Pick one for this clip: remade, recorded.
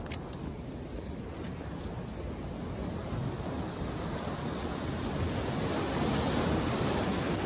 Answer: recorded